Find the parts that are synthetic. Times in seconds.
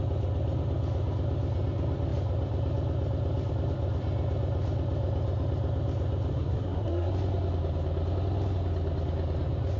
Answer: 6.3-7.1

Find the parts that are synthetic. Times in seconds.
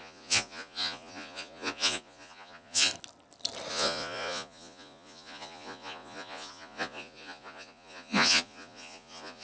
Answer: 0.0-2.9; 3.7-9.4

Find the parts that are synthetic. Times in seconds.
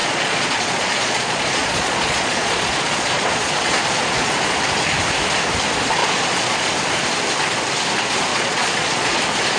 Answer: 0.0-4.3; 6.0-6.7; 8.3-9.2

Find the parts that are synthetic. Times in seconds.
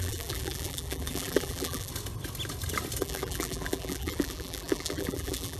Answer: 0.0-1.9; 3.0-5.6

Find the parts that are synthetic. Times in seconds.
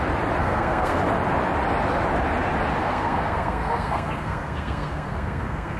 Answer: 0.4-1.0; 2.8-5.8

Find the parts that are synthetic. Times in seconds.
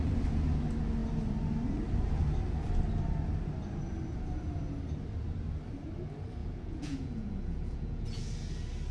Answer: 6.4-8.3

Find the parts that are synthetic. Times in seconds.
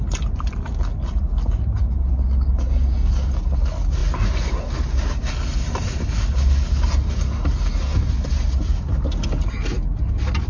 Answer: none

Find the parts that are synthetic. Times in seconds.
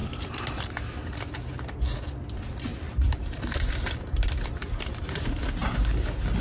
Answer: 0.0-0.7; 2.7-5.4